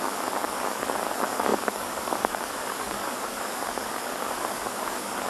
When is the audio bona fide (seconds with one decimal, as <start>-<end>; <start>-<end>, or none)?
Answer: none